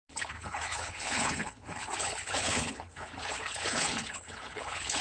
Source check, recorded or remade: remade